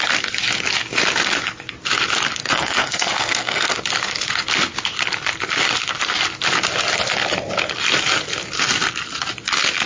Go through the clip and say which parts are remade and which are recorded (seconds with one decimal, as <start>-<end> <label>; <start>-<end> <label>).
0.0-2.4 recorded; 2.4-3.8 remade; 3.8-9.9 recorded